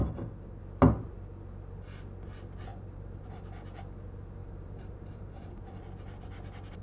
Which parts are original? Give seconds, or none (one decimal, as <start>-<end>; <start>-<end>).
0.0-2.7; 3.3-4.4; 5.6-6.8